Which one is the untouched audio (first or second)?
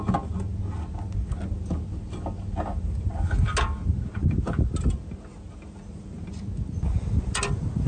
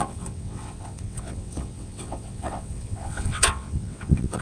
first